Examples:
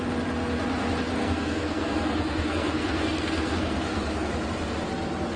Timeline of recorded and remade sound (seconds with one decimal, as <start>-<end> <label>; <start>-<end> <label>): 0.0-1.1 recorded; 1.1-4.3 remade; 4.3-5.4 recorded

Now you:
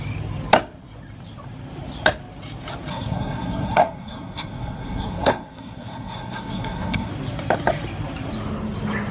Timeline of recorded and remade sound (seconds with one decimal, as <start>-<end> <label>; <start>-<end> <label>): 0.0-2.9 recorded; 2.9-7.1 remade; 7.1-9.1 recorded

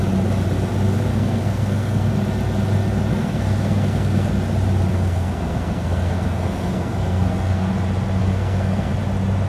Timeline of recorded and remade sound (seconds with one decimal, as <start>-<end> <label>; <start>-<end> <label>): 0.0-1.1 recorded; 1.1-2.1 remade; 2.1-3.1 recorded; 3.1-4.3 remade; 4.3-4.9 recorded; 4.9-7.7 remade; 7.7-8.2 recorded; 8.2-8.9 remade; 8.9-9.5 recorded

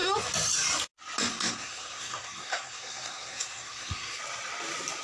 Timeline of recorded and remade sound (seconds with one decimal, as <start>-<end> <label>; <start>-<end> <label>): 0.0-1.3 recorded; 1.3-4.2 remade; 4.2-5.0 recorded